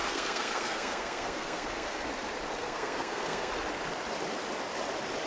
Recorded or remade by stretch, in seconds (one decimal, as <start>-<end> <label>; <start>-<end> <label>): 0.0-2.1 remade; 2.1-2.6 recorded; 2.6-3.5 remade; 3.5-5.3 recorded